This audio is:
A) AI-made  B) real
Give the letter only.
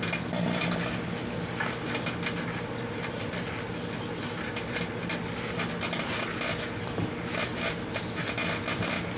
B